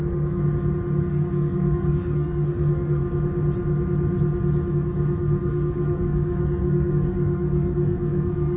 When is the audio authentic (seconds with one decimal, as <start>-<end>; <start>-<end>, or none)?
0.4-1.0; 3.0-4.7